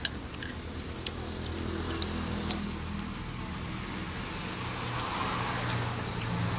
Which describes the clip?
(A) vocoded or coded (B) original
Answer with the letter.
B